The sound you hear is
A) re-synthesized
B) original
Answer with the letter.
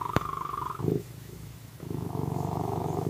A